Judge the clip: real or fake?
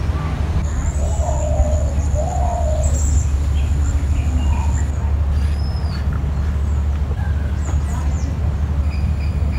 real